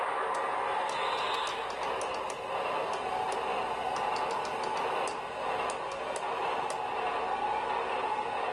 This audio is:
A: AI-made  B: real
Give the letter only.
B